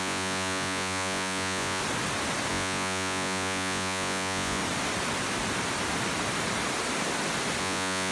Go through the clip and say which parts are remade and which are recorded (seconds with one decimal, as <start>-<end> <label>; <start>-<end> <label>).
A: 0.0-1.8 remade; 1.8-2.5 recorded; 2.5-4.6 remade; 4.6-7.6 recorded; 7.6-8.1 remade